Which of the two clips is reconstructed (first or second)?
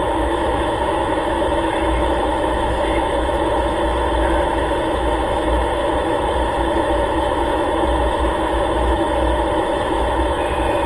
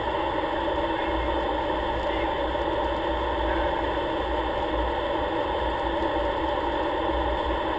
first